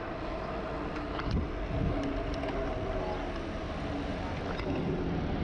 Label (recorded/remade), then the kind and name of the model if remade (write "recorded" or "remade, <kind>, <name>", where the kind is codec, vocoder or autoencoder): recorded